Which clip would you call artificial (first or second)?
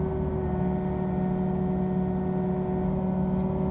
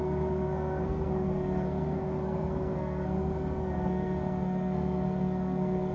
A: second